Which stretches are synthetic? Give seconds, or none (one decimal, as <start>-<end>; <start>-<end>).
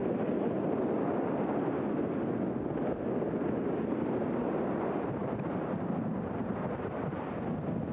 none